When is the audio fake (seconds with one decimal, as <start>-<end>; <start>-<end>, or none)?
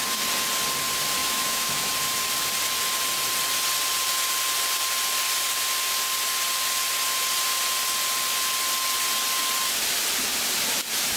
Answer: 1.2-1.9